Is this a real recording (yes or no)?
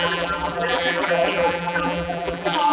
no